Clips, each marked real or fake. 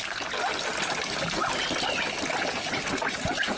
real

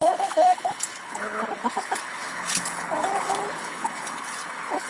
fake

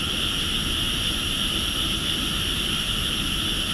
real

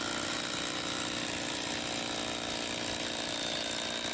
real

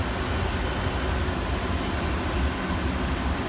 real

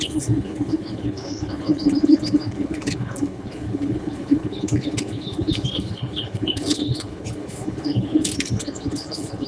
fake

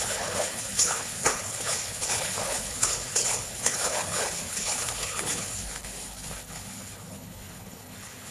fake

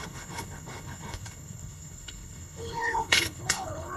fake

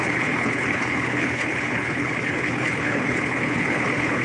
fake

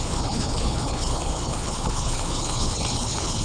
fake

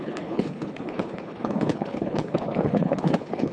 fake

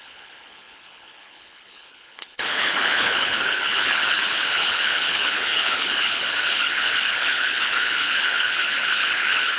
fake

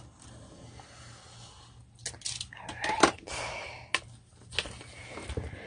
real